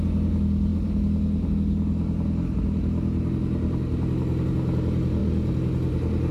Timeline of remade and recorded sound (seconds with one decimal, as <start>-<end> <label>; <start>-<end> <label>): 0.0-6.3 recorded